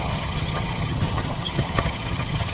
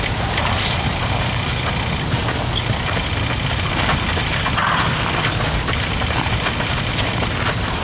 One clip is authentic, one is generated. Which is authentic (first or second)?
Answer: second